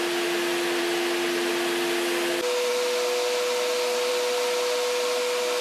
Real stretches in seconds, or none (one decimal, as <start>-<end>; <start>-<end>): 0.0-5.6